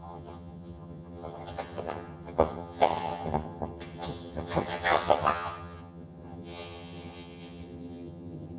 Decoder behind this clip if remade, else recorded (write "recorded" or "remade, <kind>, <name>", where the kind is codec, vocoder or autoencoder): remade, vocoder, HiFi-GAN